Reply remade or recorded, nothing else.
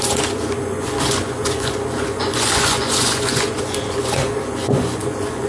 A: remade